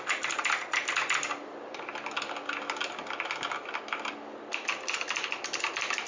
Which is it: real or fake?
real